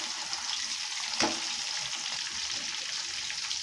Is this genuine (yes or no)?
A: yes